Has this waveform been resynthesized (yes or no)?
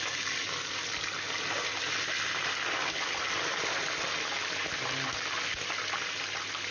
no